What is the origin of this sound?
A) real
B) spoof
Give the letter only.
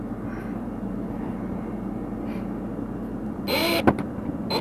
A